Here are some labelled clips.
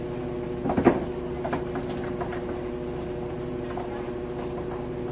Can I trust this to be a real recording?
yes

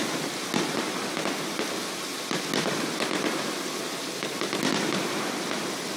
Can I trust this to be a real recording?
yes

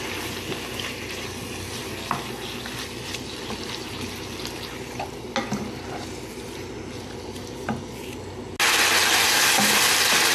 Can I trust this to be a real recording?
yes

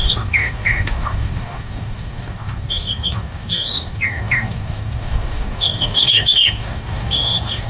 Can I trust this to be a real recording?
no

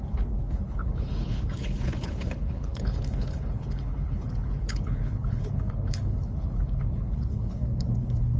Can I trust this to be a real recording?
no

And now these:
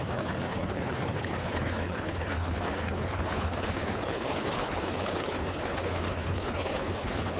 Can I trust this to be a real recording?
no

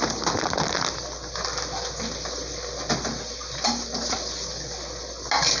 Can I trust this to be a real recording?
yes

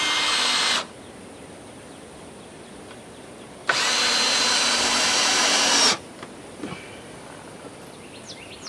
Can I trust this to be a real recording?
yes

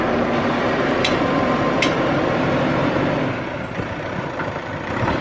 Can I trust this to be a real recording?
no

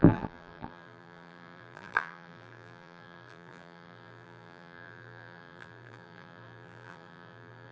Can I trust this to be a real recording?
no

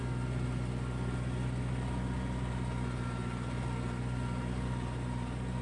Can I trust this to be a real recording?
yes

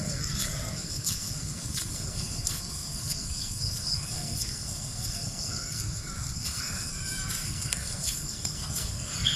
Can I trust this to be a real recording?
no